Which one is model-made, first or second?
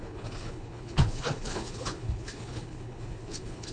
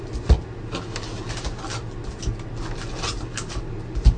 first